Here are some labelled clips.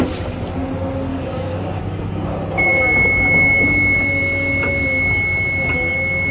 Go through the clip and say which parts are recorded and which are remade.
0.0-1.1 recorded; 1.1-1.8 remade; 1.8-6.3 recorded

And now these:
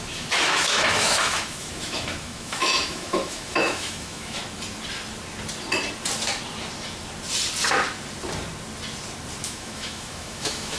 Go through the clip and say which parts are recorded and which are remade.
0.0-4.4 remade; 4.4-9.4 recorded; 9.4-10.8 remade

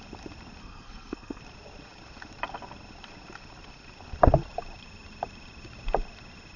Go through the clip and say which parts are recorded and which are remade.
0.0-0.6 recorded; 0.6-1.4 remade; 1.4-6.6 recorded